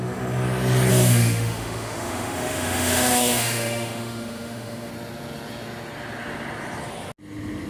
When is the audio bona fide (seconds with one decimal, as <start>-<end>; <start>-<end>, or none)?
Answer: 0.0-0.9; 4.9-7.7